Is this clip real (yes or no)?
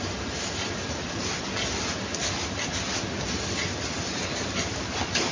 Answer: yes